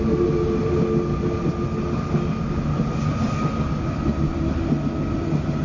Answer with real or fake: real